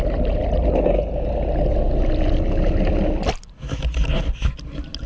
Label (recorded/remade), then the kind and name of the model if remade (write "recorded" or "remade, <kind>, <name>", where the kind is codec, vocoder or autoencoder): recorded